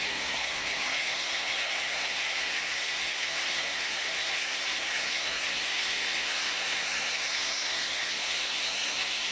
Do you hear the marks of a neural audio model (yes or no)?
yes